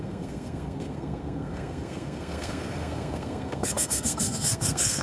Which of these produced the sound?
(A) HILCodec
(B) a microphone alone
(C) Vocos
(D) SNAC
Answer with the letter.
D